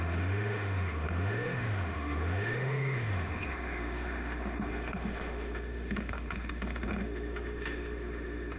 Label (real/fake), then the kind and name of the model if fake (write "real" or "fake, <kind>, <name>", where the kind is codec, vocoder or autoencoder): fake, autoencoder, DAC-VAE